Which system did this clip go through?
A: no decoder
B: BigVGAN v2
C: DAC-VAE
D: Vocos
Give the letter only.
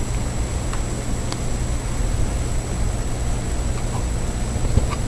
A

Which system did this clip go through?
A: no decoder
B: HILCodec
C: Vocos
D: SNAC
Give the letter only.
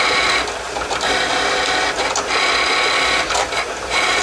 A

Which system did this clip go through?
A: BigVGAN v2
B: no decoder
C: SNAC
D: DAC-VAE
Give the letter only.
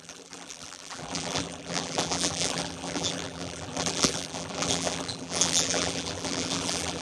A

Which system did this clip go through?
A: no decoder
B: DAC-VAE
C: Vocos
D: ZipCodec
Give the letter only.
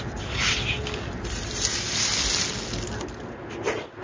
A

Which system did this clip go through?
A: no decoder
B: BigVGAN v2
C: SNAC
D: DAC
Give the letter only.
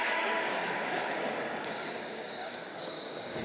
D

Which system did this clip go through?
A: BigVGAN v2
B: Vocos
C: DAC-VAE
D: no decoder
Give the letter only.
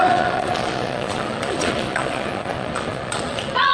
B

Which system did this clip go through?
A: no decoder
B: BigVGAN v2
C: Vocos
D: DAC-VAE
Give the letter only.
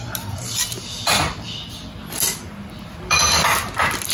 A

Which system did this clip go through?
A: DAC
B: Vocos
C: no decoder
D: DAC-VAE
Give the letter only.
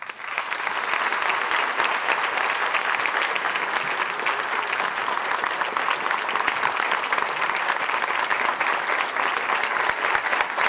C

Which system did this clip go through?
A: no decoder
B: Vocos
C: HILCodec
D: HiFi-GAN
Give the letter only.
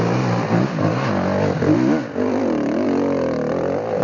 A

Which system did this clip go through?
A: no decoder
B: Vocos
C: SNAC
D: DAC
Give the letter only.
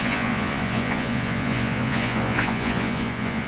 B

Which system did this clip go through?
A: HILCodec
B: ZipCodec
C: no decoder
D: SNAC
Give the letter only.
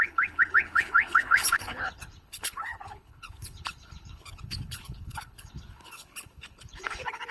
A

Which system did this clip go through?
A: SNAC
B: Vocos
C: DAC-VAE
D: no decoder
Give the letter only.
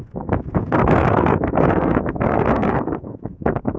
A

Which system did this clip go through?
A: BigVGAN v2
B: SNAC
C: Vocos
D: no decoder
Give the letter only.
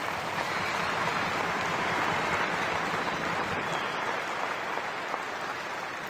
D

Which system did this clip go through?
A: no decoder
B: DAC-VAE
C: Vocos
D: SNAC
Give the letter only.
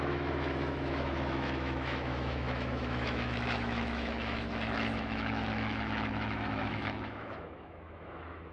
B